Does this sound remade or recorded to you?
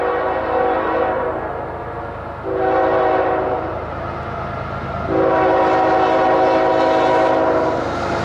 recorded